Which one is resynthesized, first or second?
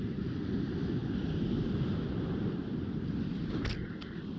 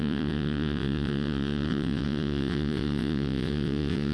second